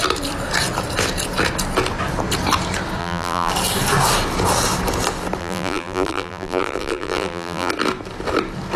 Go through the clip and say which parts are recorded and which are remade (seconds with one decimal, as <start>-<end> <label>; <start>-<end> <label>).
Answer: 0.0-3.0 recorded; 3.0-3.5 remade; 3.5-5.4 recorded; 5.4-7.7 remade; 7.7-8.8 recorded